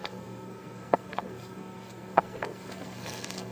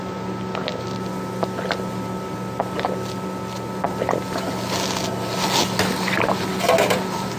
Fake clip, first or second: first